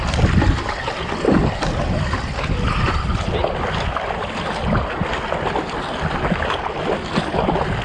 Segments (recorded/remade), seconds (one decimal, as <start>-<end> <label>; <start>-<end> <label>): 0.0-7.8 recorded